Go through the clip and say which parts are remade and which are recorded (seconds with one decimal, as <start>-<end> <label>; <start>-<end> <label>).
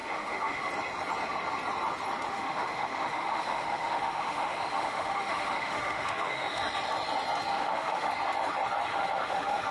0.0-0.7 remade; 0.7-2.3 recorded; 2.3-6.6 remade; 6.6-7.5 recorded; 7.5-8.1 remade; 8.1-8.9 recorded; 8.9-9.7 remade